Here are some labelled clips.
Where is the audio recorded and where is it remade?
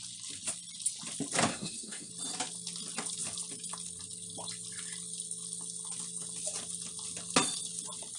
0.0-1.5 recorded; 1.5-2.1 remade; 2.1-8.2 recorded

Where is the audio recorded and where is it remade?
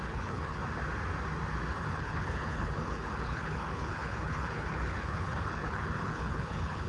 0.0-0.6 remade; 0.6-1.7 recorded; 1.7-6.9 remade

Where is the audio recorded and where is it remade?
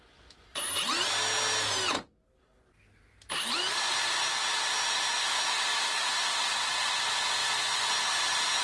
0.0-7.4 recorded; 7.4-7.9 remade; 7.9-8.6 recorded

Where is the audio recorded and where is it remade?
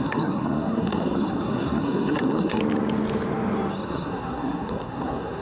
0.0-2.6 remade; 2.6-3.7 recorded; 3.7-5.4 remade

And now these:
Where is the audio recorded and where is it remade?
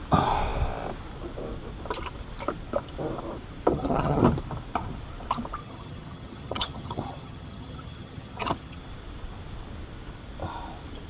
0.0-3.7 recorded; 3.7-4.2 remade; 4.2-5.6 recorded; 5.6-8.8 remade; 8.8-11.1 recorded